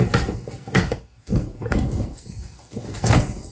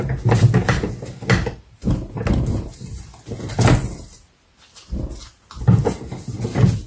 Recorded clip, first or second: second